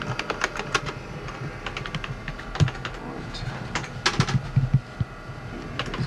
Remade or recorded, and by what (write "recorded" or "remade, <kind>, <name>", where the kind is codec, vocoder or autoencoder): recorded